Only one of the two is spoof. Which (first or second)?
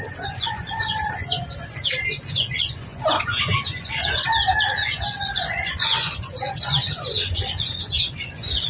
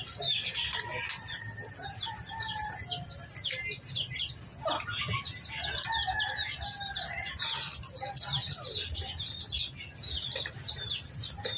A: first